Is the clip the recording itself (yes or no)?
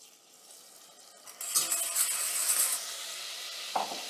yes